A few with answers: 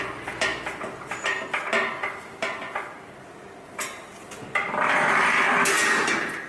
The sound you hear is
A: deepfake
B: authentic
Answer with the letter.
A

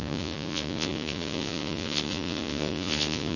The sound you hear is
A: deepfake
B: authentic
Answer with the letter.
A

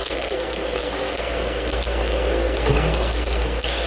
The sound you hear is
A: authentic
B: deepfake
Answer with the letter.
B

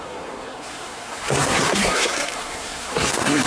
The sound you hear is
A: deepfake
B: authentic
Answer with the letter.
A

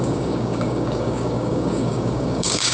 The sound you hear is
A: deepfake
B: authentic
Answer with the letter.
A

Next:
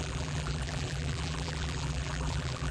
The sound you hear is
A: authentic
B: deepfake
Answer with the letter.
B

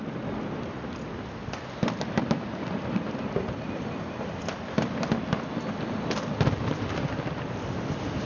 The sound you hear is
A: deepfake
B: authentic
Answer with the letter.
B